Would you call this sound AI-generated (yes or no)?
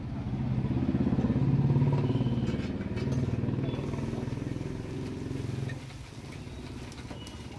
no